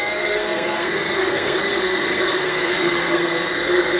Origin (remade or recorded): remade